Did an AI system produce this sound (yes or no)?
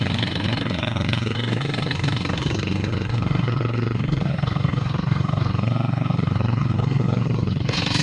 yes